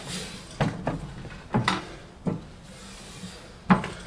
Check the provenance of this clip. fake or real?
real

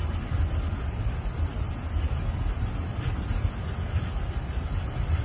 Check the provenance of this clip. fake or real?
real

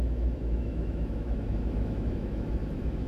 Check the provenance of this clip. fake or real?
fake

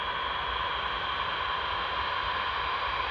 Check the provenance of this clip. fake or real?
real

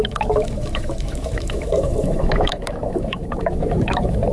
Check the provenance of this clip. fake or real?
fake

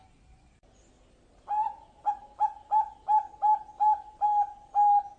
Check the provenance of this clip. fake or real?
real